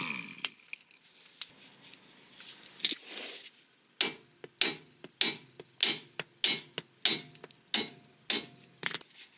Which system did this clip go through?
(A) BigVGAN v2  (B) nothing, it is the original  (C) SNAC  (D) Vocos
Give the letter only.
B